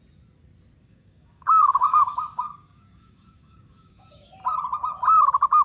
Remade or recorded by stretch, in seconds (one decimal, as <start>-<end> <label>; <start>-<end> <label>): 0.0-0.9 recorded; 0.9-4.3 remade; 4.3-5.6 recorded